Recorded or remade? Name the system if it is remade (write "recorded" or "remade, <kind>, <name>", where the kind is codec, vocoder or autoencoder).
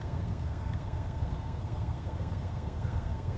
remade, codec, SNAC